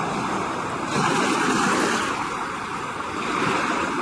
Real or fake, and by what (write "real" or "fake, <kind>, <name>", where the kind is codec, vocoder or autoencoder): fake, vocoder, BigVGAN v2